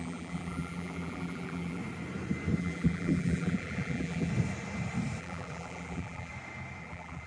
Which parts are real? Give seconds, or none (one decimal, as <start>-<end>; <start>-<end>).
1.8-2.6; 4.3-5.2; 6.3-6.8